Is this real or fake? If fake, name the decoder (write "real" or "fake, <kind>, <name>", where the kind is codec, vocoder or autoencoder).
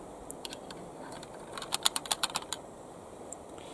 fake, vocoder, BigVGAN v2